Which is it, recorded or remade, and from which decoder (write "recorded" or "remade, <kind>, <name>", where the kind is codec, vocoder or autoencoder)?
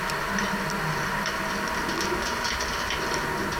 recorded